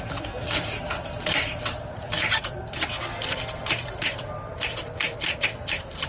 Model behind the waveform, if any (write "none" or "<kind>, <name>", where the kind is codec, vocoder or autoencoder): vocoder, BigVGAN v2